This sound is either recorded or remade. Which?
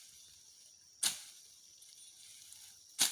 recorded